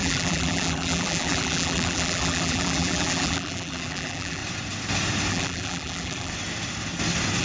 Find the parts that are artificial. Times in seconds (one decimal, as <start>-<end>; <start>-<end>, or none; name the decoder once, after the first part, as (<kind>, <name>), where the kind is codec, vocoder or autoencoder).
0.0-4.4 (vocoder, BigVGAN v2); 5.3-6.3